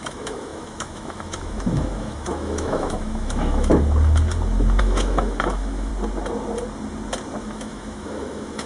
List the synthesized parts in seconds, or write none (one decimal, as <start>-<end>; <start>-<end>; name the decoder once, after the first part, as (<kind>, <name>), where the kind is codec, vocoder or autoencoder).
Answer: 0.0-3.7 (autoencoder, DAC-VAE); 4.8-5.9; 7.4-8.7